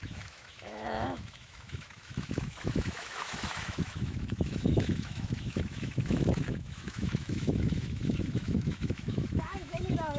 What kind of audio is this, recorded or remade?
remade